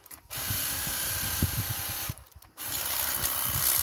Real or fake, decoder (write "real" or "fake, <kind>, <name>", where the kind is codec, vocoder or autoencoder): fake, vocoder, BigVGAN v2